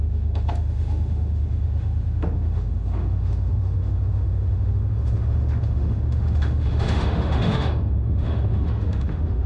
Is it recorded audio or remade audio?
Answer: remade